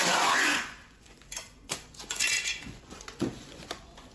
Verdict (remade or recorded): remade